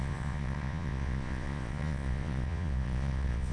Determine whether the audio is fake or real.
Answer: fake